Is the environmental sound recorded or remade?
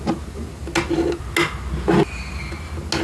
recorded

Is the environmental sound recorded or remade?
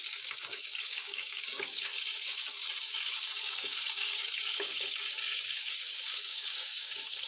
remade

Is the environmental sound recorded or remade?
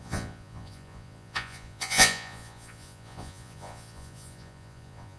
remade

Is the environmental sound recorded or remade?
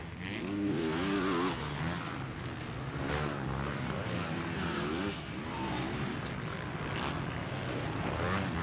recorded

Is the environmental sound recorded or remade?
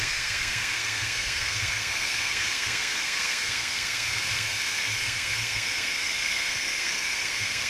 remade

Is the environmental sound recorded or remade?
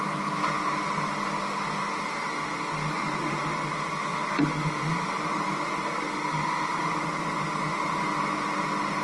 recorded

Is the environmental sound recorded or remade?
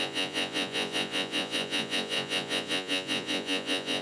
remade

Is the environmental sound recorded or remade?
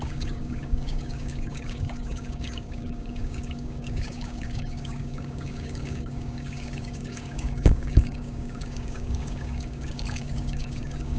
remade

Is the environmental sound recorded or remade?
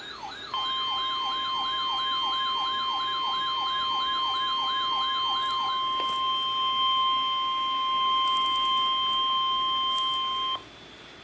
recorded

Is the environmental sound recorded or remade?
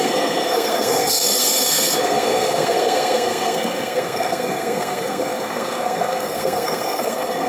remade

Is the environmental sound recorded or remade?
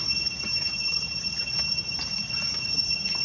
remade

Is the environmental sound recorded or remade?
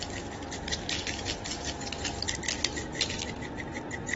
recorded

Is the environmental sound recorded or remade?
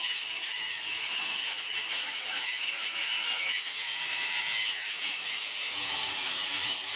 remade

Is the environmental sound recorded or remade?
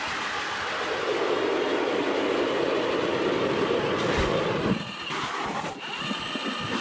recorded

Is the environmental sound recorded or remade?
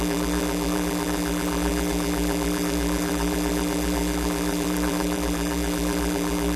remade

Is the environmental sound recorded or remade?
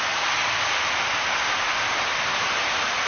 recorded